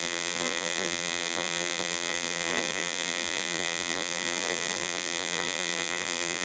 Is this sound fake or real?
fake